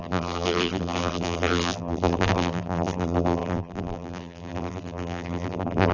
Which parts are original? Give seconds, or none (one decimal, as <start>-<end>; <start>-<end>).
none